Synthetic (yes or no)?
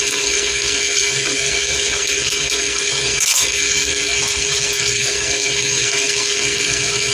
yes